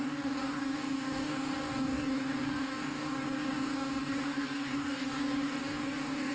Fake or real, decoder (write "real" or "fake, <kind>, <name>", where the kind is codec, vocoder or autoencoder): fake, codec, DAC